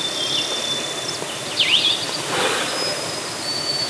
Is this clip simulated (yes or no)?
no